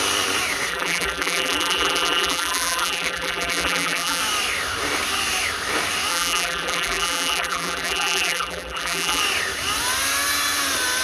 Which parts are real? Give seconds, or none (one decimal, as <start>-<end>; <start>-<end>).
0.0-0.7; 4.2-6.1; 9.2-11.0